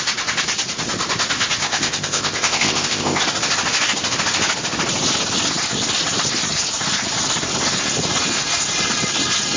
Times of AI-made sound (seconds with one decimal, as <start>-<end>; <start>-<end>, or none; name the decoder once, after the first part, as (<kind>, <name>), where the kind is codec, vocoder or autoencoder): 1.6-3.2 (codec, ZipCodec)